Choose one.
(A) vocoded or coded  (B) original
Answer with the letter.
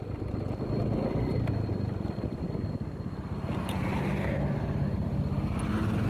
B